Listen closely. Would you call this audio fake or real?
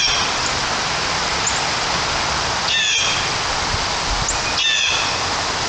real